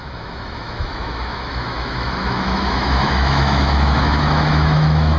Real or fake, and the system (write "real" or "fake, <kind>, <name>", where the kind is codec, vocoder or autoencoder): fake, autoencoder, DAC-VAE